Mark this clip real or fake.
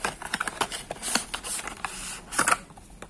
real